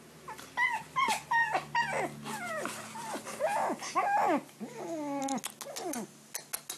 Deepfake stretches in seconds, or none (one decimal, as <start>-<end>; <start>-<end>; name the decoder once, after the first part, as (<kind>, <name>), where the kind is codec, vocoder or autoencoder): none